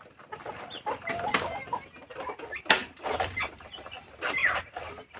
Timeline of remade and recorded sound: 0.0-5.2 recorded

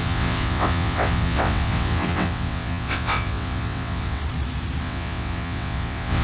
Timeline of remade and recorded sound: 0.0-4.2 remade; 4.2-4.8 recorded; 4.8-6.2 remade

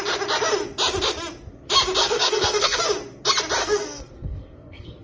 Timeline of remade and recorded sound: 0.0-2.0 recorded; 2.0-2.8 remade; 2.8-3.6 recorded; 3.6-5.0 remade

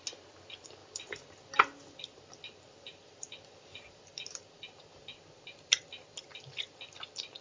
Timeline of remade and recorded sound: 0.0-0.8 recorded; 0.8-5.2 remade; 5.2-7.4 recorded

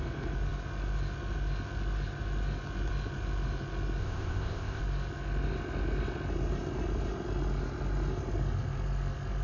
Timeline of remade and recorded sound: 0.0-4.0 recorded; 4.0-4.8 remade; 4.8-9.4 recorded